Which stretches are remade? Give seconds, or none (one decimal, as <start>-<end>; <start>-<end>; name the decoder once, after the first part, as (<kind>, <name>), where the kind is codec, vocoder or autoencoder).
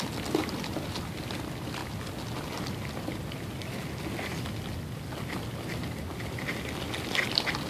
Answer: none